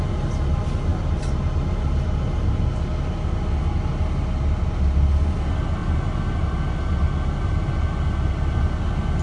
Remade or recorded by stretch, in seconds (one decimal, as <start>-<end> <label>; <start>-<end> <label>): 0.0-5.8 recorded; 5.8-6.8 remade; 6.8-9.2 recorded